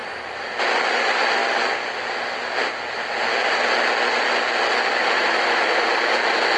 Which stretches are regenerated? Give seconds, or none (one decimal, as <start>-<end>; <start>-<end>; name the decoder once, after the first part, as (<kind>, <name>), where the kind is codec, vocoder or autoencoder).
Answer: 0.0-0.6 (vocoder, BigVGAN v2); 5.0-5.8